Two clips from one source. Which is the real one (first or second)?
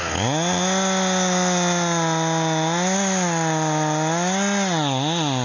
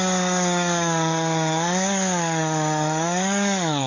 first